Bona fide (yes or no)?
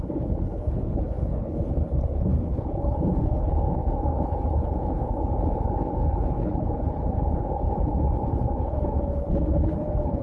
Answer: no